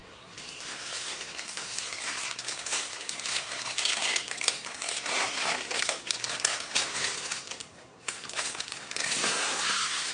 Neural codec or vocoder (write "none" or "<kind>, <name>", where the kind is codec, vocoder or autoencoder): codec, SNAC